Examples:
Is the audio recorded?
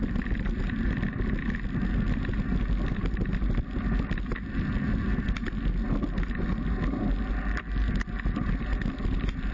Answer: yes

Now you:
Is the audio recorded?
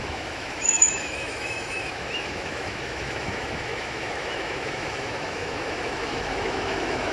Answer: no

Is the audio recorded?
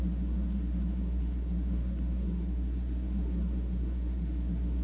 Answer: no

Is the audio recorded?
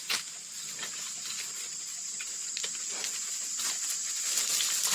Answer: no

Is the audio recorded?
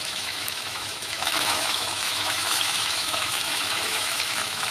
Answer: no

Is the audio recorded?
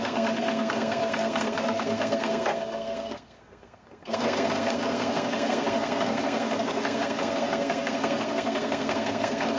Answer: no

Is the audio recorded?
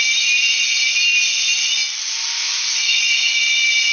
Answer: yes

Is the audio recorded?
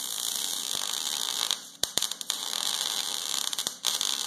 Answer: no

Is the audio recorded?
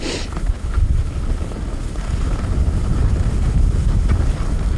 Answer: yes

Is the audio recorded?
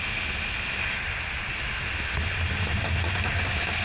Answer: yes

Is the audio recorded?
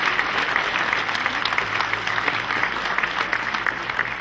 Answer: yes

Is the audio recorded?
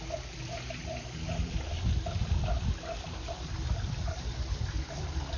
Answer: no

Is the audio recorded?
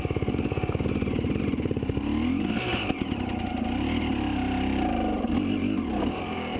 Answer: yes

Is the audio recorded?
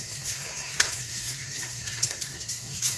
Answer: no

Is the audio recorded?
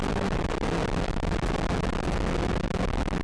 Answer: yes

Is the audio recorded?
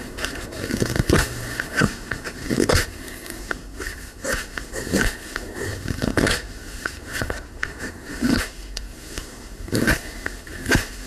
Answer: no